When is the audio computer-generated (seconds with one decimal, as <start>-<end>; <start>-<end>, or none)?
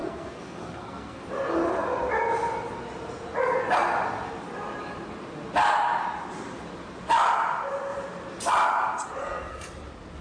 0.0-1.2; 9.2-9.7